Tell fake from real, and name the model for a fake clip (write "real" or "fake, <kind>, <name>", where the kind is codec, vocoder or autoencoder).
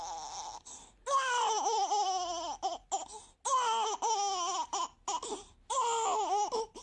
real